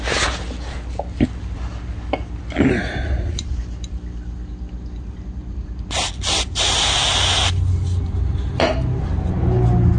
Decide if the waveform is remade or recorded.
recorded